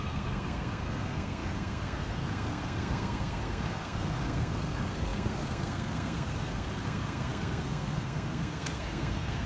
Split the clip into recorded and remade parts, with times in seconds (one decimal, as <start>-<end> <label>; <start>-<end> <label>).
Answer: 0.0-9.5 remade